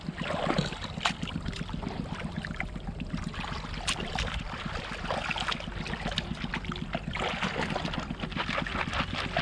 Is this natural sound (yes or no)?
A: yes